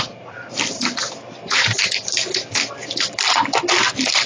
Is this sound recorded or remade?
recorded